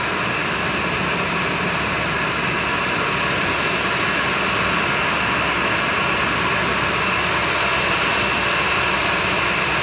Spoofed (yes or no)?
no